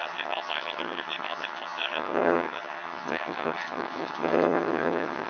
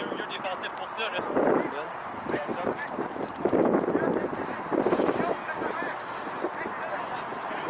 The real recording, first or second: second